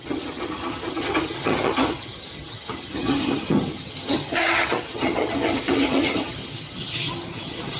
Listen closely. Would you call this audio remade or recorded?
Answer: remade